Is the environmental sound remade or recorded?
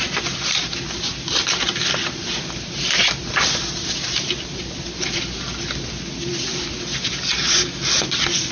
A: recorded